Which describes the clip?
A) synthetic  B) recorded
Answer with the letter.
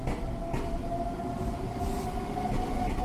B